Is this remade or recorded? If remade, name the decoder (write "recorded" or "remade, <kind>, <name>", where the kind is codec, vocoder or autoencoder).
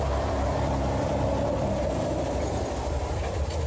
remade, vocoder, BigVGAN v2